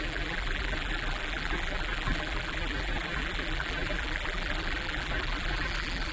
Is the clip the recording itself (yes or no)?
no